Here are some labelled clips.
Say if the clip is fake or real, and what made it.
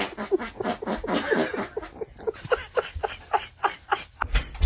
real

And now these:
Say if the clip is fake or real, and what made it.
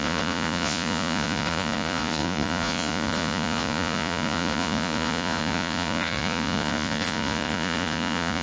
fake, vocoder, Vocos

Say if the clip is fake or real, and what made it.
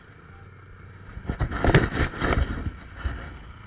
real